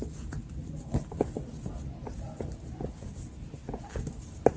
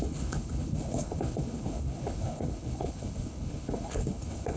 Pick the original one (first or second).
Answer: first